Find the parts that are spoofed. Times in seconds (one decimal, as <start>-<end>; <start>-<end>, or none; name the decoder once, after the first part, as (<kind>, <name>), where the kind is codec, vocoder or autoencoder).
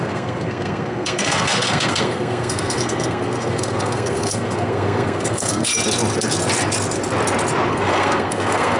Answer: 0.0-5.7 (codec, SNAC); 7.7-8.8